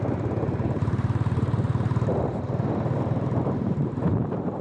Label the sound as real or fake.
fake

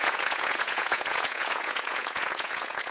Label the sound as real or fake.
fake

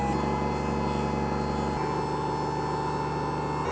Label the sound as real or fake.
real